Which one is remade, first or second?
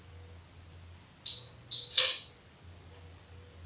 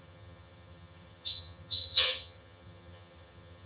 second